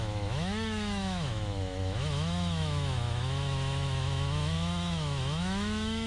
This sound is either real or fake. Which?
fake